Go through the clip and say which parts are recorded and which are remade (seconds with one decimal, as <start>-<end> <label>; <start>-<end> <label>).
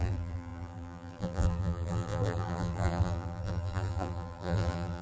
0.0-5.0 remade